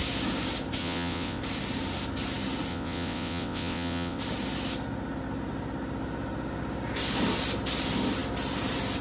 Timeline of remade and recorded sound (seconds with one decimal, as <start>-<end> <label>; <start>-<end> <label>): 0.0-0.8 recorded; 0.8-1.4 remade; 1.4-2.7 recorded; 2.7-4.2 remade; 4.2-9.0 recorded